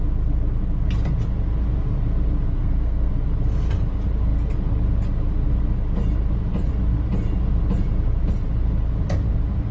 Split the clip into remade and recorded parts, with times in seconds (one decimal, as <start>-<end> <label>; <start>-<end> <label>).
0.0-2.6 recorded; 2.6-3.1 remade; 3.1-9.7 recorded